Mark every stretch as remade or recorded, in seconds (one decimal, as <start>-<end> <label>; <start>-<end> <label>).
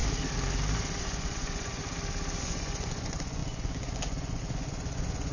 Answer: 0.0-1.0 recorded; 1.0-1.8 remade; 1.8-2.4 recorded; 2.4-5.3 remade